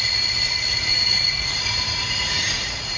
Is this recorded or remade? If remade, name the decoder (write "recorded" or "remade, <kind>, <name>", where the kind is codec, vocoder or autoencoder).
remade, vocoder, Vocos